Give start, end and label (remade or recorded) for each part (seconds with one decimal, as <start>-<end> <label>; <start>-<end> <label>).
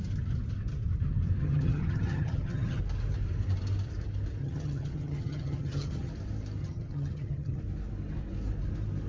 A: 0.0-1.4 recorded; 1.4-2.8 remade; 2.8-4.4 recorded; 4.4-6.1 remade; 6.1-6.6 recorded; 6.6-7.6 remade; 7.6-9.1 recorded